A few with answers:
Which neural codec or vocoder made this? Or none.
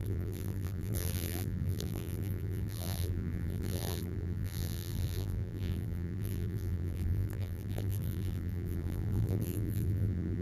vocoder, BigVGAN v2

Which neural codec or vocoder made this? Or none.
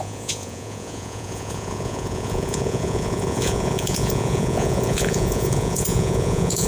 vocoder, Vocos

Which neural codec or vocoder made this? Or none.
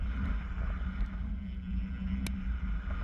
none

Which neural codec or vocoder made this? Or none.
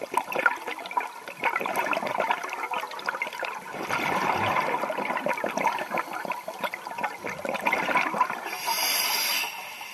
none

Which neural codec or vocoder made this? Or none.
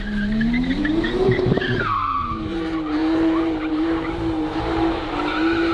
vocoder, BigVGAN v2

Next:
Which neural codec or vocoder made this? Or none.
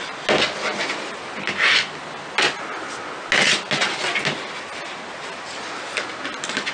none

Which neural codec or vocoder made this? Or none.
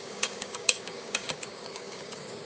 codec, DAC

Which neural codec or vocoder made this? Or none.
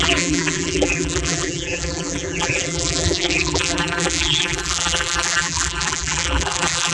vocoder, BigVGAN v2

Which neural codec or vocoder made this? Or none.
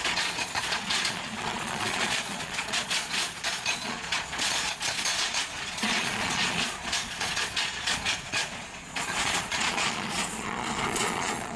vocoder, Vocos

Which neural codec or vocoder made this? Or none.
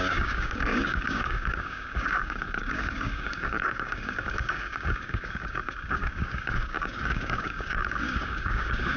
codec, DAC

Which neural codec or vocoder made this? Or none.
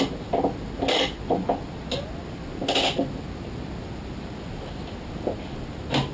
none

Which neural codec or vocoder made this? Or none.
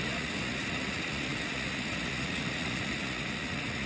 vocoder, Vocos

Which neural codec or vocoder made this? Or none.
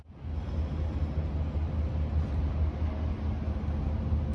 none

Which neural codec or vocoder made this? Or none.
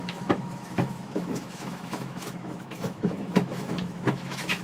autoencoder, DAC-VAE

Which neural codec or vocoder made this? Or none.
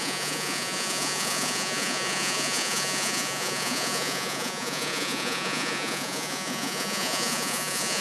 vocoder, Vocos